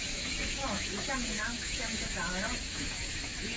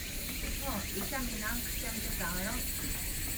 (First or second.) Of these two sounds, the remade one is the first